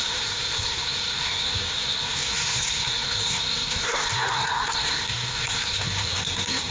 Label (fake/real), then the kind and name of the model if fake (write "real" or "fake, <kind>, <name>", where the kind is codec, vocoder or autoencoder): fake, codec, SNAC